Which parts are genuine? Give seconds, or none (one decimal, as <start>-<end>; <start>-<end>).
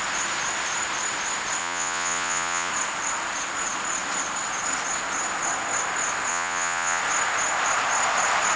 0.0-1.6; 2.7-6.3; 7.0-8.6